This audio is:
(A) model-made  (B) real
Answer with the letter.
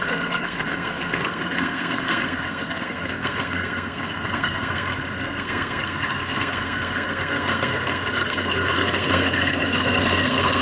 A